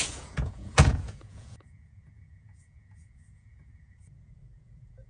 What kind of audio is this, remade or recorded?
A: remade